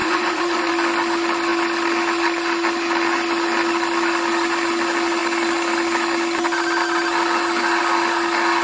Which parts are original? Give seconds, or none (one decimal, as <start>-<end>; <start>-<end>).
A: 0.7-8.6